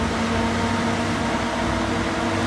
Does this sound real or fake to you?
real